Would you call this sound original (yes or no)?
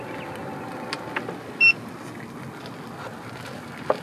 yes